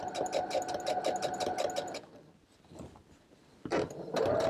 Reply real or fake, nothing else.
real